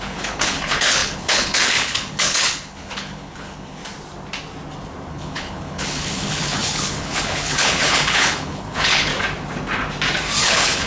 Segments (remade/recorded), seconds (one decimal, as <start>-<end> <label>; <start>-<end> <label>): 0.0-3.8 remade; 3.8-5.1 recorded; 5.1-9.1 remade; 9.1-10.4 recorded; 10.4-10.9 remade